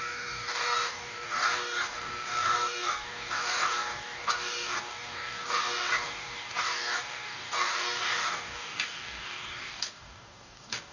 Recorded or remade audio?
remade